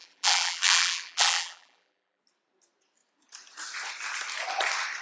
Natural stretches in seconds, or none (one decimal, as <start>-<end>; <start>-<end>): 2.2-5.0